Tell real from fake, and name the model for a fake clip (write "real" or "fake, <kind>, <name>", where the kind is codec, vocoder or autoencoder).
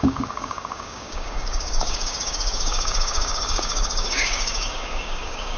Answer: fake, codec, DAC